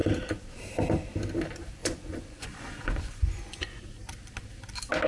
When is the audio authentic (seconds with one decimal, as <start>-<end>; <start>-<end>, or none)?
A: 0.0-1.8; 3.8-5.1